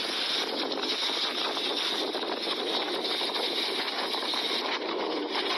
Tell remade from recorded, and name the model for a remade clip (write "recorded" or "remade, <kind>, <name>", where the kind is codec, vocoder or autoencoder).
recorded